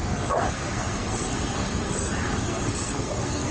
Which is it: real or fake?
fake